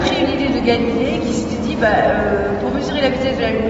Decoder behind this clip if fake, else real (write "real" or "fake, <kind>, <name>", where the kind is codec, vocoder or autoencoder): real